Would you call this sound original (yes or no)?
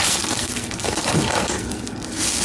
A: no